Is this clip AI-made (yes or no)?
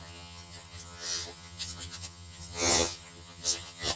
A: yes